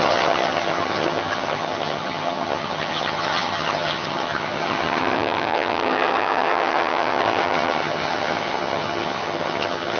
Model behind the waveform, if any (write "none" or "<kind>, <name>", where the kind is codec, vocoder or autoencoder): vocoder, HiFi-GAN